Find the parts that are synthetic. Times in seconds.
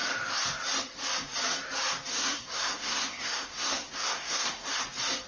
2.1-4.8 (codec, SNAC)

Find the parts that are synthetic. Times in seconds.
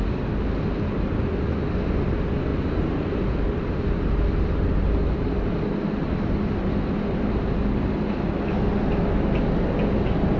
2.5-6.5 (vocoder, BigVGAN v2)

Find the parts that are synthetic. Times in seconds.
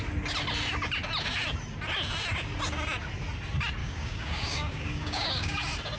3.8-5.6 (codec, DAC)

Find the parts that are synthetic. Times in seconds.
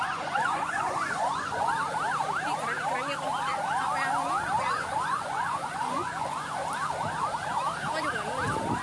0.0-1.7 (vocoder, Vocos); 4.6-6.6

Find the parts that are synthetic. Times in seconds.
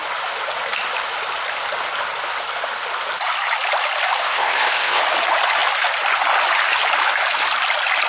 4.2-5.0 (codec, ZipCodec)